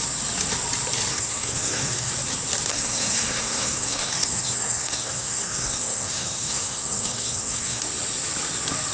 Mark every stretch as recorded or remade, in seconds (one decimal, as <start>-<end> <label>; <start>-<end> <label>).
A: 0.0-1.1 recorded; 1.1-2.1 remade; 2.1-2.7 recorded; 2.7-7.8 remade; 7.8-8.9 recorded